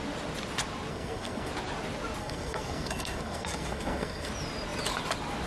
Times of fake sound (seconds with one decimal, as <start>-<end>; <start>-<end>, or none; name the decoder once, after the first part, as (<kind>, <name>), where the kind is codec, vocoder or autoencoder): 0.9-1.5 (codec, SNAC); 2.2-4.3

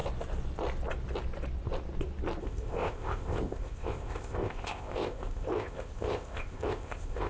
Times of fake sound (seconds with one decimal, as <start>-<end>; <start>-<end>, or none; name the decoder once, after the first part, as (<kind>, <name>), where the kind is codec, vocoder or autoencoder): 2.4-7.3 (codec, ZipCodec)

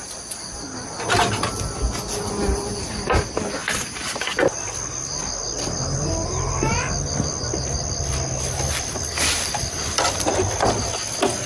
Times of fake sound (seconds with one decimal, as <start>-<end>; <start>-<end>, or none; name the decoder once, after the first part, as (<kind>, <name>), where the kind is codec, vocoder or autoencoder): none

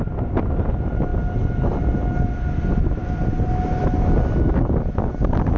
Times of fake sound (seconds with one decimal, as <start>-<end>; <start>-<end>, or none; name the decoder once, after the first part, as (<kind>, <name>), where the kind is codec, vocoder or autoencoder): none